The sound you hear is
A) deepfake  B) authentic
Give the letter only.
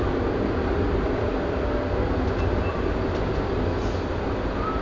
B